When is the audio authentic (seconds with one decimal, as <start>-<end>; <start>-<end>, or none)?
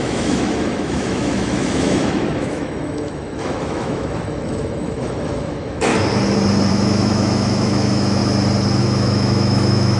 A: 5.9-6.7; 8.2-8.8